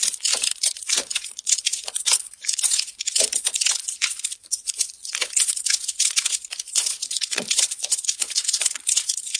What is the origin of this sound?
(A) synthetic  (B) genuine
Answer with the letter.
A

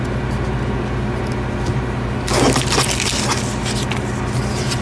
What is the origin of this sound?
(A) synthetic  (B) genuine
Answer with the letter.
B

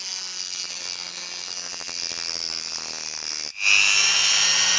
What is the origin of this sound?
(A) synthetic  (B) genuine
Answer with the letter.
B